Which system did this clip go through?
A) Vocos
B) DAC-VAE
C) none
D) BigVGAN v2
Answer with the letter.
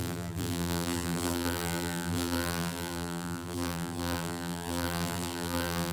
D